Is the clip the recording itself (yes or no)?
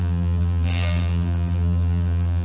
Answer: no